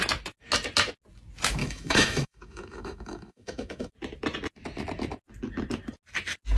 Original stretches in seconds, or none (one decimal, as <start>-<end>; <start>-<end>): 0.0-1.6; 3.9-6.6